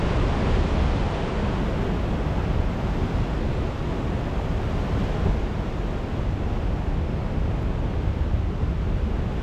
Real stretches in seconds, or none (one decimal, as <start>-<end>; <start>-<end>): 0.0-9.4